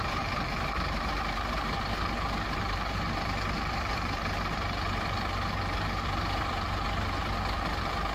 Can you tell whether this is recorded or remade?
remade